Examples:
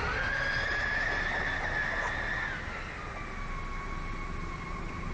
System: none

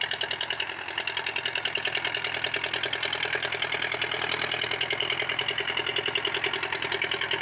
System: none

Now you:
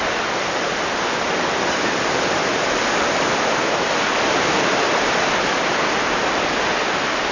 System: none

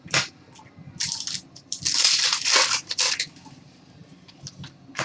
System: none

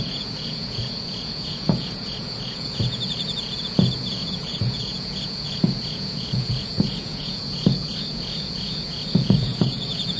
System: vocoder, Vocos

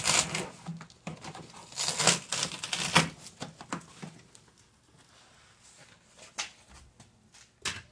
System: none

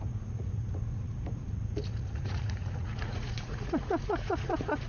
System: vocoder, Vocos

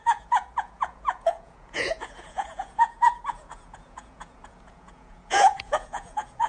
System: vocoder, Vocos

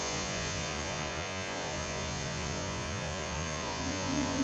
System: vocoder, Vocos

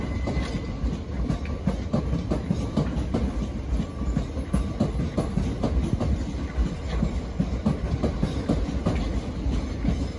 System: none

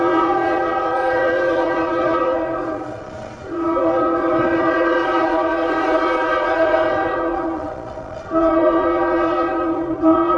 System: vocoder, Vocos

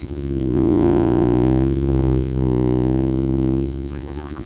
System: vocoder, Vocos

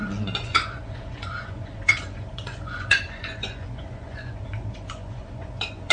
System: vocoder, Vocos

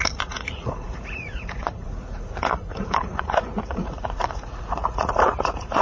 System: vocoder, Vocos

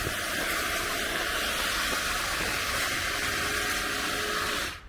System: none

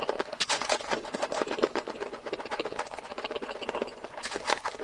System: vocoder, Vocos